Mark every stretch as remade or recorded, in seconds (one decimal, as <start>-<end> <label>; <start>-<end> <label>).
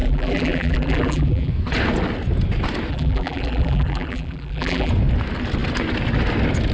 0.0-1.5 remade; 1.5-2.9 recorded; 2.9-4.9 remade; 4.9-6.7 recorded